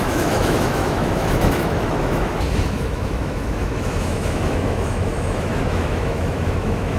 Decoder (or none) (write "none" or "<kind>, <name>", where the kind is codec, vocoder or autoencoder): autoencoder, DAC-VAE